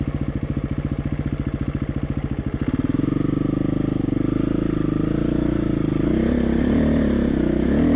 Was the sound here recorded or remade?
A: recorded